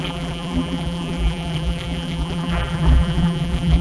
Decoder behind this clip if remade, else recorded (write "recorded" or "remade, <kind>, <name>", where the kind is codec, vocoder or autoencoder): remade, vocoder, BigVGAN v2